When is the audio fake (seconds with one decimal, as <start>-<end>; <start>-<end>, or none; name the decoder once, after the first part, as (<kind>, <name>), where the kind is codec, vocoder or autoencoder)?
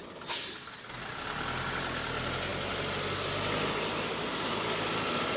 none